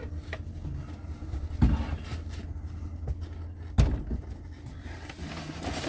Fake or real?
real